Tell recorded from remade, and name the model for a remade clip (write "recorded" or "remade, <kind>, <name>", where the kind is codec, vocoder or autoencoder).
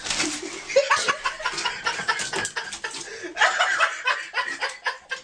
recorded